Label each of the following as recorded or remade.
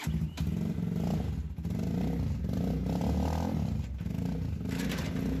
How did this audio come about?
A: recorded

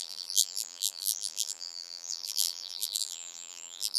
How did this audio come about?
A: remade